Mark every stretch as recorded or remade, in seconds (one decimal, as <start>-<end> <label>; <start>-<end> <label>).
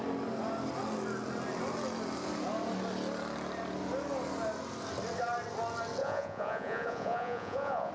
0.0-6.0 recorded; 6.0-7.9 remade